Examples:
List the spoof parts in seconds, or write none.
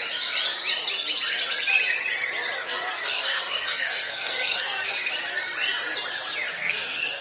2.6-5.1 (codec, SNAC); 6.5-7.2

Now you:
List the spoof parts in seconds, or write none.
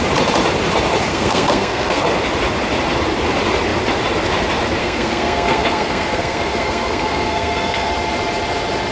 1.1-2.0 (codec, SNAC); 4.8-7.9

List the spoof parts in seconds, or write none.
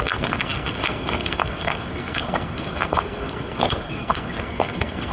0.0-5.1 (codec, SNAC)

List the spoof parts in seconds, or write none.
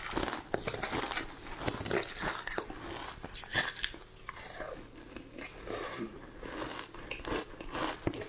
none